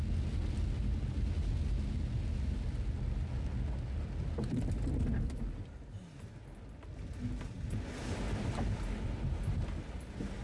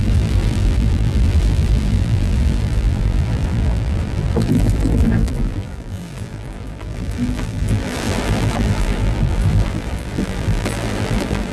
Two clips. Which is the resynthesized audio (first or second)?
second